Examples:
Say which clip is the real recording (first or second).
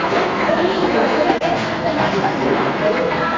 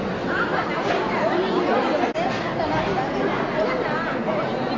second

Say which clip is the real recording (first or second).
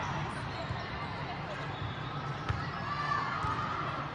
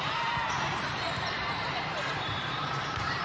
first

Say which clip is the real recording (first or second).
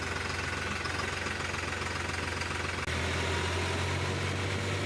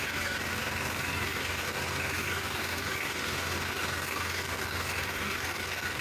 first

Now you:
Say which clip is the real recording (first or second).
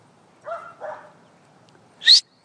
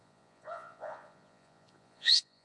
first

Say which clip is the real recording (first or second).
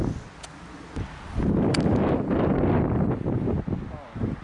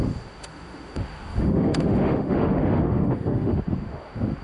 first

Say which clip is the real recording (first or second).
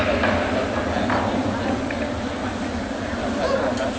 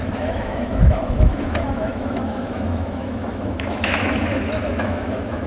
first